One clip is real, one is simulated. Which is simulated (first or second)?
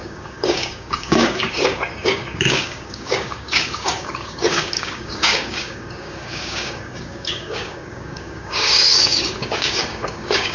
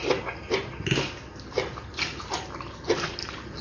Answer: first